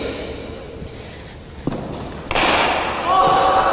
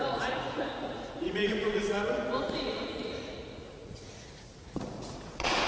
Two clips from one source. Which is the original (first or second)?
first